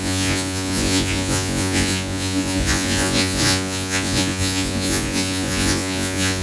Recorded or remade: remade